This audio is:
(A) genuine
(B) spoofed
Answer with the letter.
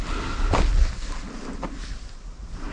A